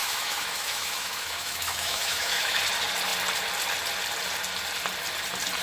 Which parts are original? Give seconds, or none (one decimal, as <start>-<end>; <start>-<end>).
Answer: 2.6-5.6